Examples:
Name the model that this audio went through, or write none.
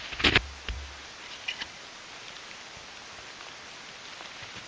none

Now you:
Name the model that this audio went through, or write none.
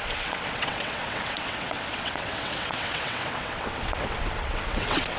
vocoder, WaveNeXt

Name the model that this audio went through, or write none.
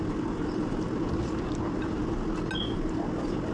none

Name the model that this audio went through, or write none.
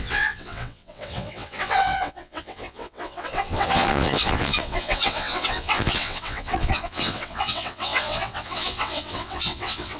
vocoder, WaveNeXt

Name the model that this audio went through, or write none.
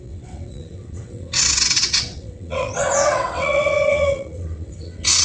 vocoder, WaveNeXt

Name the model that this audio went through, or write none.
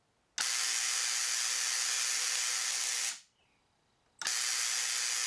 none